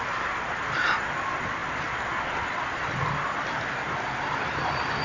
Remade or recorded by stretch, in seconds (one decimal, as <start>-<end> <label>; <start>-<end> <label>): 0.0-5.0 recorded